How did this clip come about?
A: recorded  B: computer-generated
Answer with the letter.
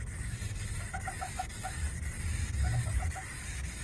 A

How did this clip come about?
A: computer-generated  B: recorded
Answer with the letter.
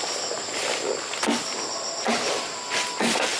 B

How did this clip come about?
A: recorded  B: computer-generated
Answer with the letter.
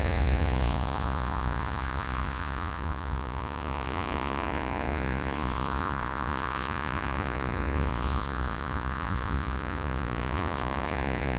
B